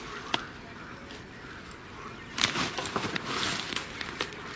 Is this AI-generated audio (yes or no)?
no